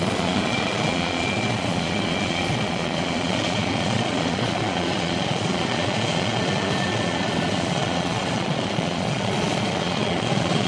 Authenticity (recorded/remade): remade